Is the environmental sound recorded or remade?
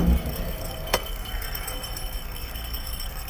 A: remade